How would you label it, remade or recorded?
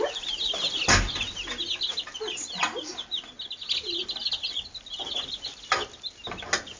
recorded